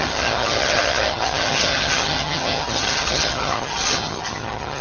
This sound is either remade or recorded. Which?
remade